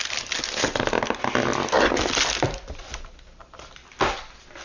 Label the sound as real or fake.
real